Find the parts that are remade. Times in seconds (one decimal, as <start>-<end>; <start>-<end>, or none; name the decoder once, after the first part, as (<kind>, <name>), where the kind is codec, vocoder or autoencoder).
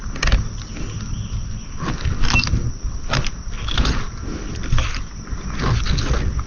none